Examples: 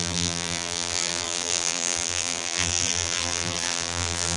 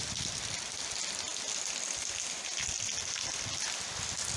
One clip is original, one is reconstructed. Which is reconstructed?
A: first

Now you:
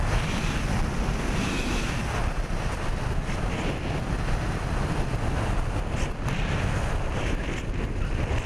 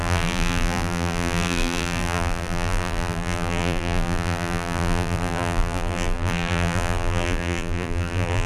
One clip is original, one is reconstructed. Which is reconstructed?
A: second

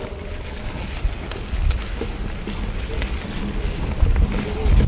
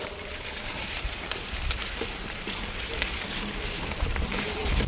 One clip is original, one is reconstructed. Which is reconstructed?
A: second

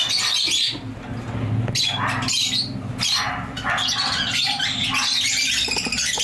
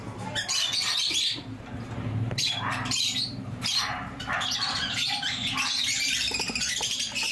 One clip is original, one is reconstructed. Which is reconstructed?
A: second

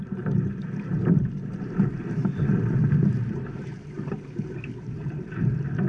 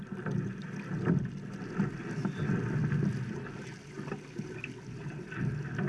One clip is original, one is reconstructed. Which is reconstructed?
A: first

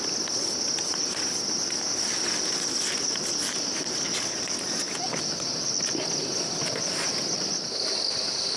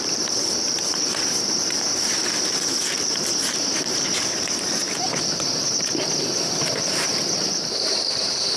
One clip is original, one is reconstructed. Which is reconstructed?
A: second